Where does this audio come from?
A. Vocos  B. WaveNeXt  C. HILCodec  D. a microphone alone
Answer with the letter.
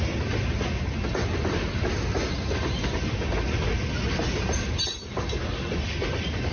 D